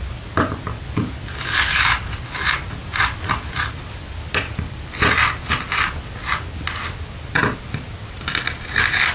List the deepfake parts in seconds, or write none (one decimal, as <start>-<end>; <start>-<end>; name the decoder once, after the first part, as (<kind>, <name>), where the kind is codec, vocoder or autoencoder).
2.8-5.6 (vocoder, BigVGAN v2)